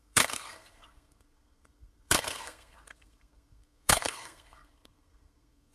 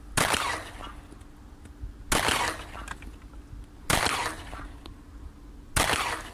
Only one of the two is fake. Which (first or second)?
first